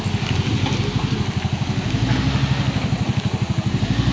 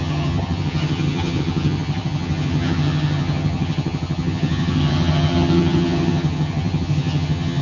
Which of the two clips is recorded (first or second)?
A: first